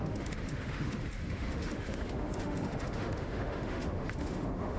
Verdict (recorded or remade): remade